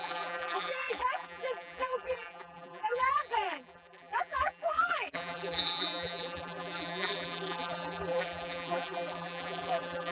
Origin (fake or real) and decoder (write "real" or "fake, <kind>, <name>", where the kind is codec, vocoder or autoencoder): fake, vocoder, BigVGAN v2